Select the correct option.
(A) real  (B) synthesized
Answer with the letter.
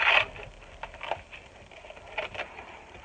A